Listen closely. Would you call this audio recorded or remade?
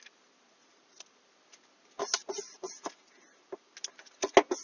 recorded